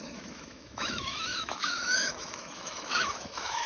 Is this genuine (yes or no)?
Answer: no